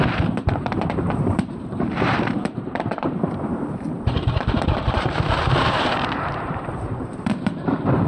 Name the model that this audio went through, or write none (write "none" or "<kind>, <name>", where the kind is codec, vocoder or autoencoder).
vocoder, BigVGAN v2